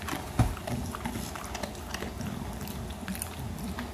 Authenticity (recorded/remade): recorded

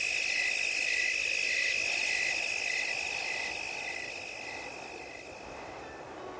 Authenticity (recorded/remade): recorded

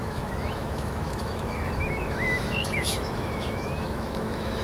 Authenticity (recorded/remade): remade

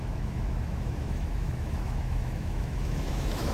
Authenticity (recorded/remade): remade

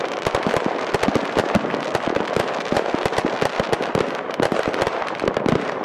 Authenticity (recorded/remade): recorded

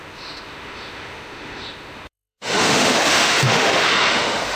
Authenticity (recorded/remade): remade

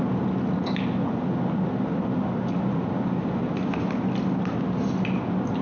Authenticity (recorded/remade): recorded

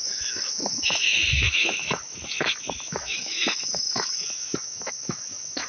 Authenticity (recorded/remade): remade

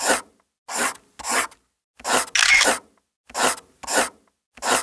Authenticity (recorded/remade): recorded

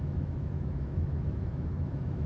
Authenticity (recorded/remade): remade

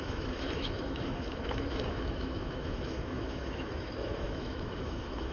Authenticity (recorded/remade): remade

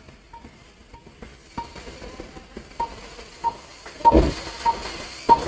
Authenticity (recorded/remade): recorded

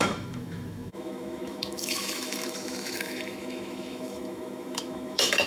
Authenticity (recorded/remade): remade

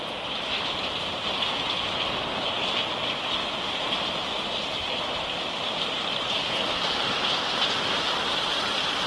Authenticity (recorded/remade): recorded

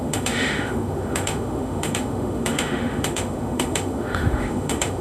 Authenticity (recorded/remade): remade